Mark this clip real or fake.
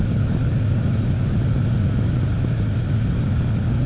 real